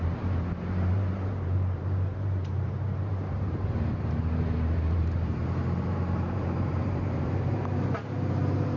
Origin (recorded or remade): remade